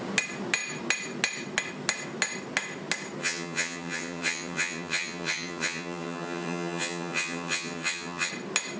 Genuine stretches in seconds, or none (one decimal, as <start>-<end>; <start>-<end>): 0.0-3.2; 8.3-8.8